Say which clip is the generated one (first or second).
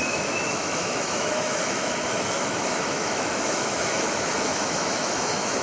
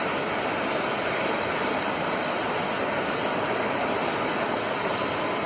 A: first